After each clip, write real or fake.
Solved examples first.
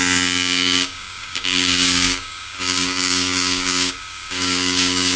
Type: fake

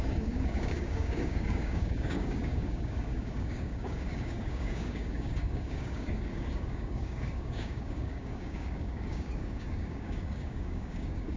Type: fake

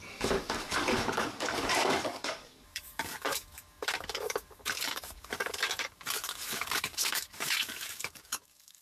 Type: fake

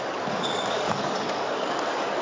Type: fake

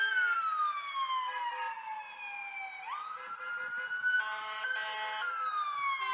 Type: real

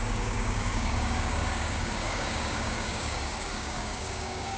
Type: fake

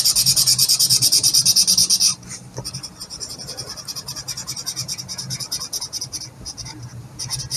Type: real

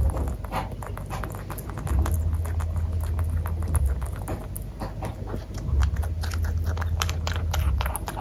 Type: real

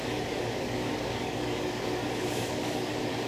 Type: fake